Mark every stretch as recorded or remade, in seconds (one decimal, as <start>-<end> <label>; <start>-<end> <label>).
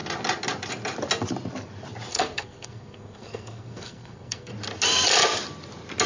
0.0-2.1 recorded; 2.1-4.5 remade; 4.5-6.1 recorded